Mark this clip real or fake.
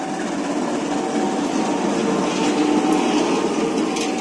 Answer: real